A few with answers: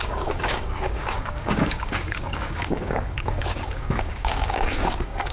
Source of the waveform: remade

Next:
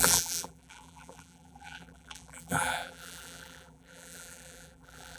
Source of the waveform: remade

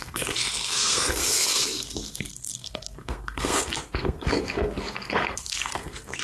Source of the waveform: remade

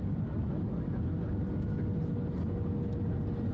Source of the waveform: recorded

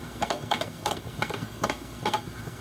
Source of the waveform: remade